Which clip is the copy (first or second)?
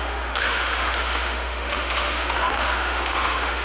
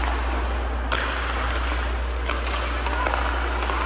first